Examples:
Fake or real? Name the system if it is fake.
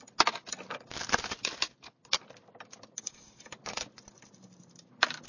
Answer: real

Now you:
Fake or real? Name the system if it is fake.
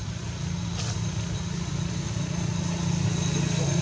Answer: real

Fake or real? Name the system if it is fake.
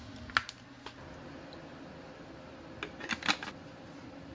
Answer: real